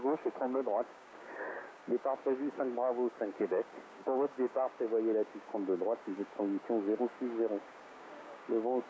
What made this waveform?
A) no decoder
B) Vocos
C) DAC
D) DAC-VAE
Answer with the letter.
C